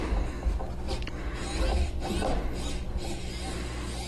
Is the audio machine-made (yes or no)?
no